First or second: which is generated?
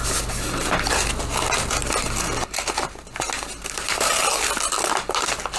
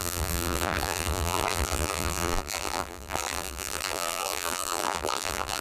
second